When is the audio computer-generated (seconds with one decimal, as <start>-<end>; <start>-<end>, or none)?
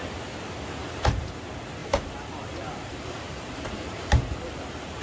0.8-1.4; 1.8-5.0